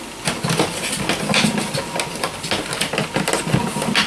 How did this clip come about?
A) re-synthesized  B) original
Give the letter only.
B